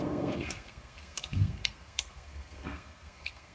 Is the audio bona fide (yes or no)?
no